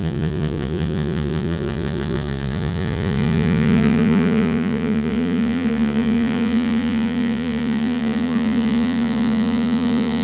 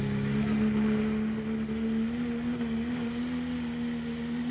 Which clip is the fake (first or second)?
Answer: first